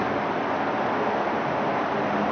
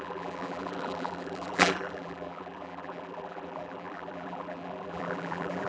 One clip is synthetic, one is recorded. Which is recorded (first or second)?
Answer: first